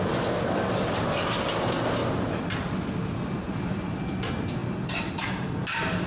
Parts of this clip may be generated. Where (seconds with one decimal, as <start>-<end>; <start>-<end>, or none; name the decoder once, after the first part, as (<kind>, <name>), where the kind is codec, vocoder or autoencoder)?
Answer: none